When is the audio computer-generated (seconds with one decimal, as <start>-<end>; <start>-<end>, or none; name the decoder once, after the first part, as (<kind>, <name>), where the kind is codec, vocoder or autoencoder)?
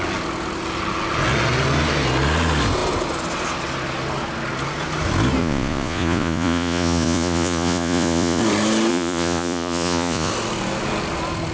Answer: 5.4-8.4 (vocoder, Vocos); 8.9-10.3